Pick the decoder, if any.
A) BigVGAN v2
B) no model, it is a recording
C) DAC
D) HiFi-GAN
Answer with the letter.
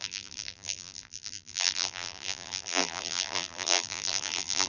A